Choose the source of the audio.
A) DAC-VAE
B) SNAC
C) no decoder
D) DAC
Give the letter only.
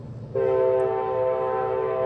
C